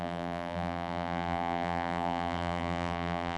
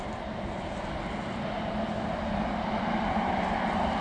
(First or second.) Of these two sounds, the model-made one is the first